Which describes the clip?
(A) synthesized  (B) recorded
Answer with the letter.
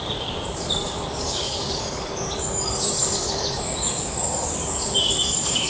A